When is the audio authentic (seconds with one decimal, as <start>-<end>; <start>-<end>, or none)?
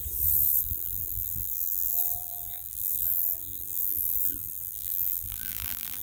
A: 0.0-0.6